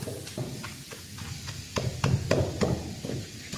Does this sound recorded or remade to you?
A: recorded